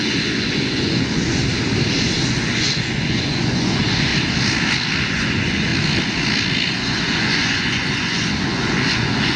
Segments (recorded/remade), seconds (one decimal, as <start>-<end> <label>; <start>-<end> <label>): 0.0-1.4 remade; 1.4-2.3 recorded; 2.3-4.1 remade; 4.1-5.0 recorded; 5.0-5.7 remade; 5.7-6.7 recorded; 6.7-9.4 remade